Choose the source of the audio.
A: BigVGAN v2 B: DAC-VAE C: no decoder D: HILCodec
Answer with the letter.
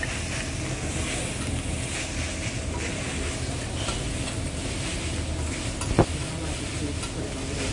C